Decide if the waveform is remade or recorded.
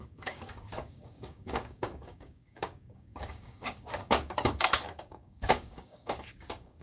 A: remade